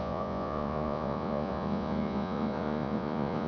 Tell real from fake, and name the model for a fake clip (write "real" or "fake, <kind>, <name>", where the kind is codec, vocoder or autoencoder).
fake, vocoder, Vocos